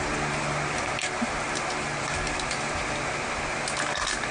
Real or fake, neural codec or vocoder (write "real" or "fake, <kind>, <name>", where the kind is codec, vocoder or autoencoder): real